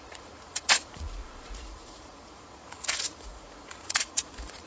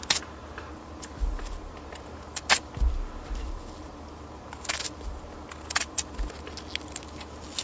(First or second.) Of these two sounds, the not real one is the first